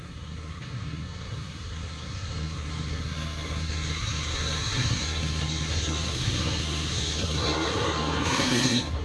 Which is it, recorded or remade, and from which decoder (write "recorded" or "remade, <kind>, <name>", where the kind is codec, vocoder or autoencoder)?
remade, codec, SNAC